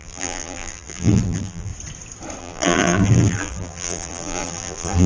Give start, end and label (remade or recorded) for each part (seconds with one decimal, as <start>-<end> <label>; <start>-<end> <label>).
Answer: 0.0-1.7 remade; 1.7-2.4 recorded; 2.4-5.1 remade